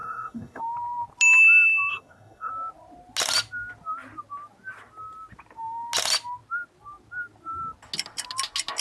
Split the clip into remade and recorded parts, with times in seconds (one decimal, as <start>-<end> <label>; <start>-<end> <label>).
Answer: 0.0-0.6 remade; 0.6-1.9 recorded; 1.9-2.5 remade; 2.5-8.8 recorded